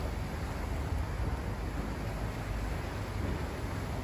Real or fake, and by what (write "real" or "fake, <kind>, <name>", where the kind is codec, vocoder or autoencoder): real